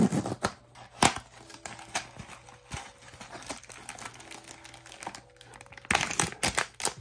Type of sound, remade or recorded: recorded